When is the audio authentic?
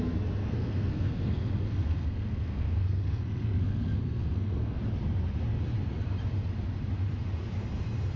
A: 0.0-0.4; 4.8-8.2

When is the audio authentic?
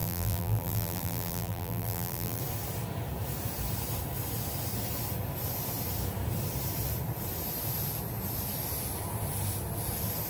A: 2.4-10.3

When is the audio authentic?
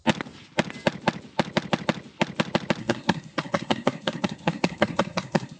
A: 0.0-2.8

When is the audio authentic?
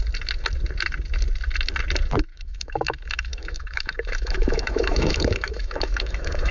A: 0.0-2.3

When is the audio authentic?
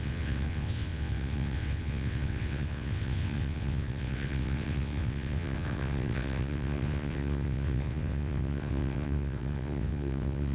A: none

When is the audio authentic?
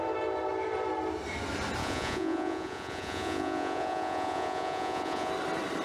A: 0.0-1.8; 5.3-5.8